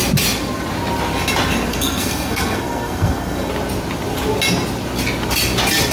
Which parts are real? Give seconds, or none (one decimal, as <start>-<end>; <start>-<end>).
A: 0.0-1.7; 3.5-5.9